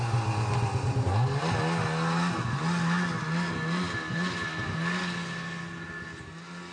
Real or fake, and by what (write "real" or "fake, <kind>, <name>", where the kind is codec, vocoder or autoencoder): real